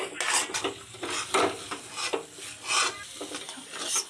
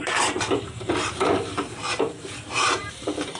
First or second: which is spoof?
second